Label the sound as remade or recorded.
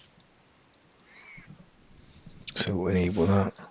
recorded